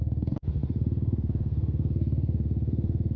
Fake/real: fake